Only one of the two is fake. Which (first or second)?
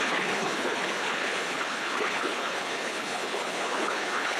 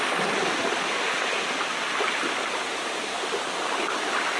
first